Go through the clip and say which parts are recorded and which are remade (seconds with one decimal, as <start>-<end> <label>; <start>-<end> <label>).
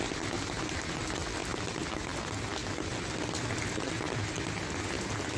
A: 0.0-5.4 recorded